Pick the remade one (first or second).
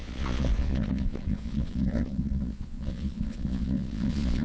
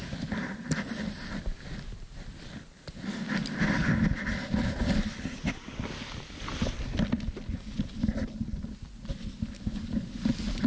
first